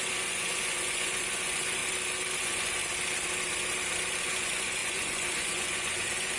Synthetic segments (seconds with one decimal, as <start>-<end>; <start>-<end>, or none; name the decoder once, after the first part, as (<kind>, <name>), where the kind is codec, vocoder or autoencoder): 0.0-1.8 (vocoder, Vocos); 2.4-2.8; 4.2-6.4